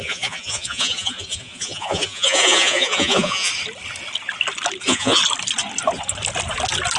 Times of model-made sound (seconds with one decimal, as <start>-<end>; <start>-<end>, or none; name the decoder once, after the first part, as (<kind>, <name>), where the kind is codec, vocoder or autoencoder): 0.0-3.5 (vocoder, Vocos); 4.8-5.2